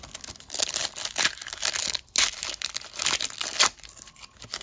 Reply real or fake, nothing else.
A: real